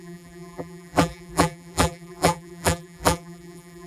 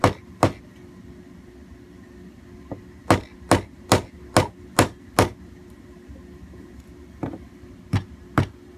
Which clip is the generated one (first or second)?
first